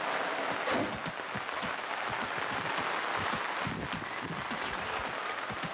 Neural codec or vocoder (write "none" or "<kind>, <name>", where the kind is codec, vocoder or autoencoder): none